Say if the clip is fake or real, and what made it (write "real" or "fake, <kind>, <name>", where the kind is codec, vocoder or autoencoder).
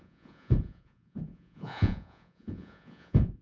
fake, vocoder, Vocos